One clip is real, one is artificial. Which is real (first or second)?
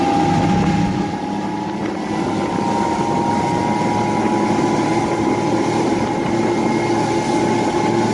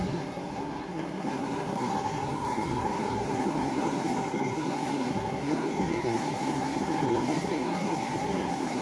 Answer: first